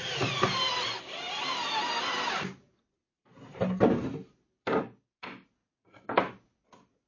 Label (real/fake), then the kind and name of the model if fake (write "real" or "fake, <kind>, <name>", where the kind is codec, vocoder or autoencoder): real